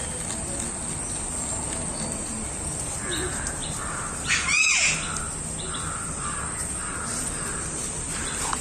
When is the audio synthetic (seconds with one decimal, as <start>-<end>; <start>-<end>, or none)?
none